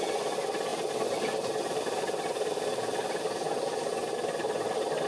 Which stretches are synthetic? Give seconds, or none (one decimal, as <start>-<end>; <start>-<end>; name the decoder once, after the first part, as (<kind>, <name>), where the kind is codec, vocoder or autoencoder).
none